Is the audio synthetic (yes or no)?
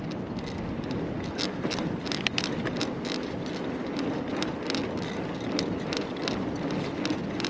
no